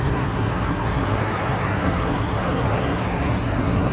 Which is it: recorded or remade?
remade